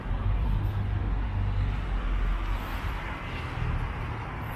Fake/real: real